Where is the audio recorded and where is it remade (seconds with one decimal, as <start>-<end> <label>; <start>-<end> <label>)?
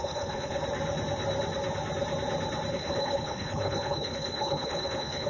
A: 0.0-0.6 remade; 0.6-2.7 recorded; 2.7-5.3 remade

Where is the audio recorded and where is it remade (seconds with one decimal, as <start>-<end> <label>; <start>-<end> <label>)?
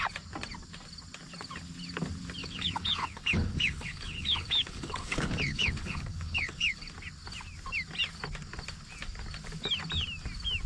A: 0.0-2.4 recorded; 2.4-6.9 remade; 6.9-10.7 recorded